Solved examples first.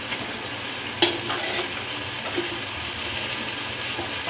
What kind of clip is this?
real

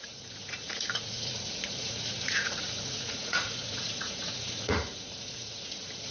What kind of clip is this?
fake